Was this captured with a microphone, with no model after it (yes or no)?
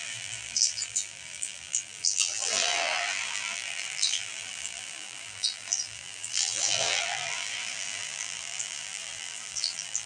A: no